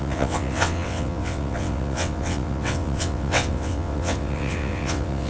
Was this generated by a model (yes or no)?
yes